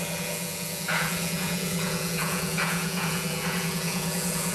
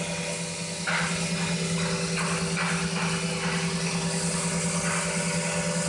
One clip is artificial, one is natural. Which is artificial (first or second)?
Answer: first